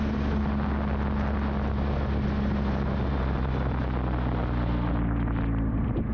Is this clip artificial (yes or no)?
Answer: no